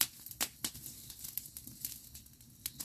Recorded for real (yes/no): yes